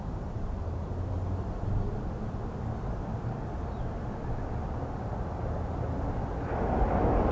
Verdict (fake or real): real